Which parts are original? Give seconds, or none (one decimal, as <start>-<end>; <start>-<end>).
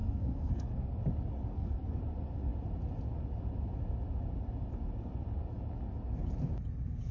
1.0-1.5; 2.0-7.1